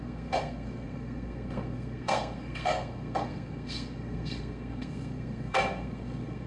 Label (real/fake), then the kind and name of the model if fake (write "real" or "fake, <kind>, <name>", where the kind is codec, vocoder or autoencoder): fake, codec, SNAC